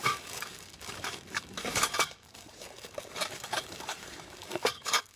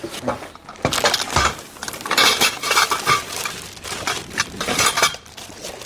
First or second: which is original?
second